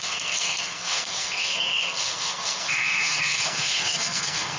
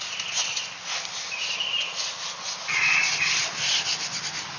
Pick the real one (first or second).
second